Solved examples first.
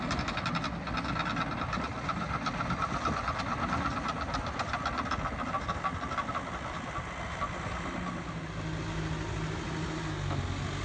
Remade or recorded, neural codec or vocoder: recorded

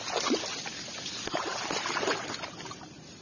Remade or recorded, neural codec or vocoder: recorded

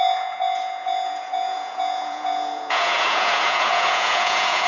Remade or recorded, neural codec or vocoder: remade, vocoder, Vocos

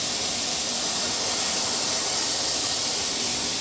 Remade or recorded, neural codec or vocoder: recorded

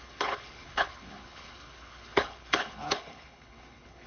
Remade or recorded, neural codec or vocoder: remade, codec, HILCodec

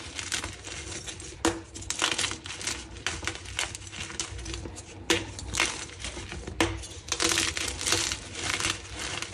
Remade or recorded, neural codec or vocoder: recorded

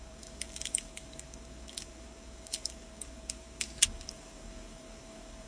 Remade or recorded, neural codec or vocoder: remade, codec, DAC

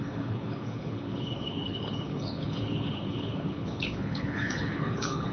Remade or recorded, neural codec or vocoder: remade, codec, HILCodec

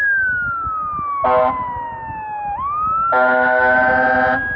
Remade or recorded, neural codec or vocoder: recorded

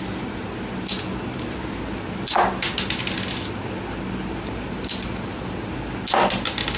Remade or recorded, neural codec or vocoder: recorded